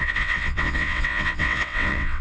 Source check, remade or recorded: remade